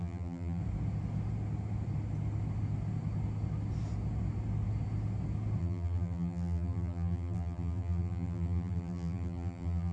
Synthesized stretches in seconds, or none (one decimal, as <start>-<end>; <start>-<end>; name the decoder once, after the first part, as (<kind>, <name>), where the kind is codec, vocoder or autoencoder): 0.0-0.6 (vocoder, BigVGAN v2); 5.6-9.9